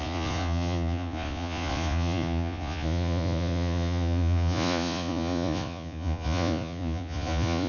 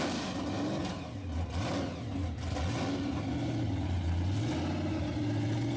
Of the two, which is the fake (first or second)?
first